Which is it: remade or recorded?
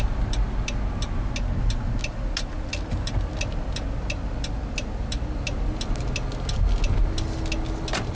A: recorded